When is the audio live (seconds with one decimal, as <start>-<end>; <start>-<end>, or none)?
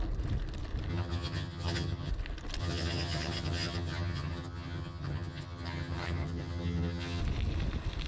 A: 0.0-0.9; 2.1-2.6; 7.2-8.1